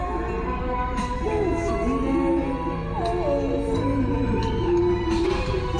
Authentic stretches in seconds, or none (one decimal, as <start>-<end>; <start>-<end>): 0.0-0.6; 1.5-4.1